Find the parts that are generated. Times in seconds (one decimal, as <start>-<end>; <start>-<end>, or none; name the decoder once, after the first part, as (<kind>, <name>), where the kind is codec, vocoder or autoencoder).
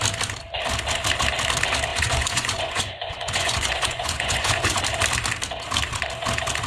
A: 1.9-4.8 (vocoder, Vocos)